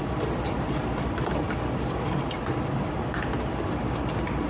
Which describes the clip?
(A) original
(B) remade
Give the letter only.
A